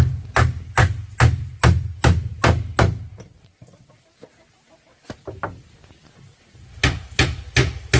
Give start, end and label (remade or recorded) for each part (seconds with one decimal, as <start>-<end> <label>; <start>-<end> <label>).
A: 0.0-8.0 recorded

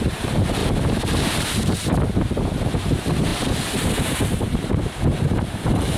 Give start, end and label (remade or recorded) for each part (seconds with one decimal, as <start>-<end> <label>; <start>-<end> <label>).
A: 0.0-6.0 remade

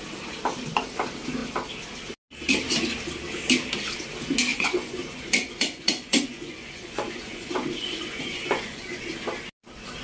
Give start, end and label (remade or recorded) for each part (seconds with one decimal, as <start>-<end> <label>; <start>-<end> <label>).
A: 0.0-4.5 recorded; 4.5-9.0 remade; 9.0-10.0 recorded

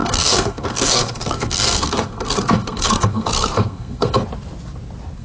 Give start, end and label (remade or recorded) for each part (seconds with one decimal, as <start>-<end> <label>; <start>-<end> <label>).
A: 0.0-4.2 remade; 4.2-5.2 recorded

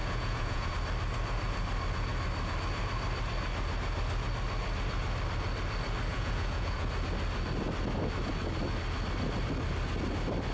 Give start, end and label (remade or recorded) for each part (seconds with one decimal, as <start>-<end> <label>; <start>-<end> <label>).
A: 0.0-0.7 remade; 0.7-6.1 recorded; 6.1-6.9 remade; 6.9-10.5 recorded

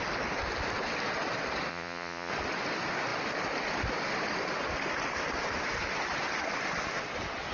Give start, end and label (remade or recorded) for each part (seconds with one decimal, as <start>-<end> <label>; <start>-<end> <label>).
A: 0.0-1.7 recorded; 1.7-2.3 remade; 2.3-7.5 recorded

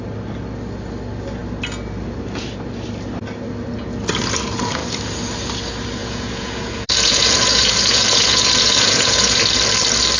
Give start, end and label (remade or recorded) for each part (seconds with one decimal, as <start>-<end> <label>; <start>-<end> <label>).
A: 0.0-6.0 recorded; 6.0-9.4 remade; 9.4-10.2 recorded